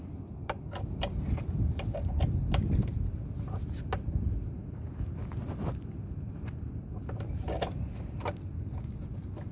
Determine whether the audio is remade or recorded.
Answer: recorded